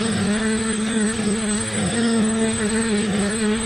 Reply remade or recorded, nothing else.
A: remade